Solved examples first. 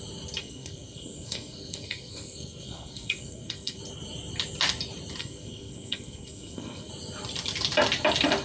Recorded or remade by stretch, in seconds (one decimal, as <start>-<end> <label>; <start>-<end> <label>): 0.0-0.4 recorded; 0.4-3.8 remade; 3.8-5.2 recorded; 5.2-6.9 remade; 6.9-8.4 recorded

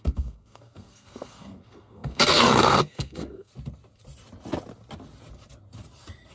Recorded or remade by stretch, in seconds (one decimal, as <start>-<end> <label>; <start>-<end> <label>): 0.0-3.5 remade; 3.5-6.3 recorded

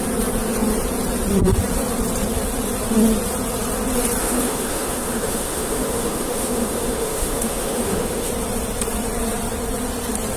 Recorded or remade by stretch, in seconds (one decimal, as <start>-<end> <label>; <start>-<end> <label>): 0.0-4.2 recorded; 4.2-8.3 remade; 8.3-10.4 recorded